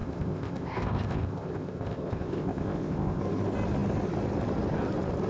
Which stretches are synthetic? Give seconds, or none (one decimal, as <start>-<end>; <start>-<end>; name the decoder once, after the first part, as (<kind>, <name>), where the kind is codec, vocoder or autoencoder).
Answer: 0.0-3.2 (codec, ZipCodec)